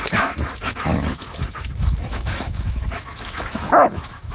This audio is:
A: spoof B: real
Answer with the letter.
A